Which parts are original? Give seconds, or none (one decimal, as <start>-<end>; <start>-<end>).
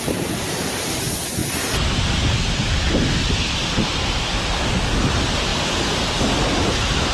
0.0-7.1